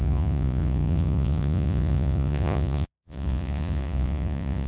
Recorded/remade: remade